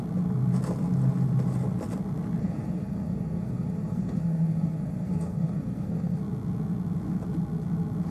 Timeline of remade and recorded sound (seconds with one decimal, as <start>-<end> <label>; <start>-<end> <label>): 0.0-2.4 recorded; 2.4-6.2 remade; 6.2-8.1 recorded